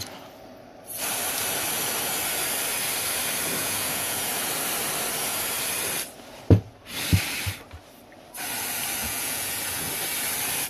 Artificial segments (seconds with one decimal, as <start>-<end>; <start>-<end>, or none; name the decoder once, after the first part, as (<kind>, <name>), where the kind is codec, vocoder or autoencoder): 3.6-4.3 (vocoder, Vocos); 9.0-9.9